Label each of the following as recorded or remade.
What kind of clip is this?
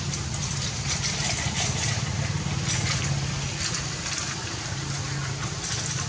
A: recorded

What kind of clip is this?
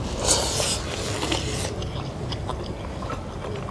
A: recorded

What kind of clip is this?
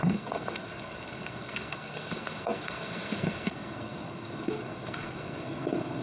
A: remade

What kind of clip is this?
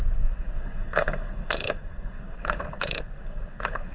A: remade